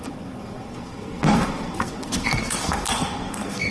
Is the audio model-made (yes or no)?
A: yes